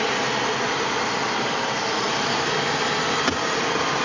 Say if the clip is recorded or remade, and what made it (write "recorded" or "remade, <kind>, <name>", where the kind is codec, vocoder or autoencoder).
recorded